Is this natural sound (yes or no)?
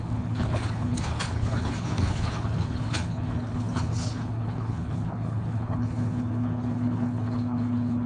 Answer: no